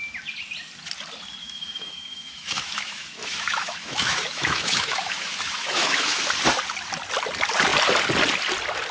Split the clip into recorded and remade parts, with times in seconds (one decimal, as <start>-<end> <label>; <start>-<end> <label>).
0.0-1.4 recorded; 1.4-6.2 remade; 6.2-8.9 recorded